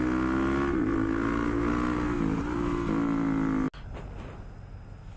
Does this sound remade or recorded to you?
recorded